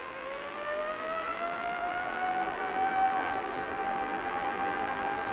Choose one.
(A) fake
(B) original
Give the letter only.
A